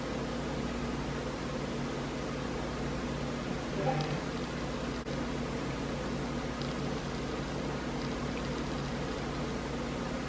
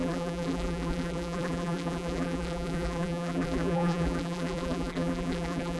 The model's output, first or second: second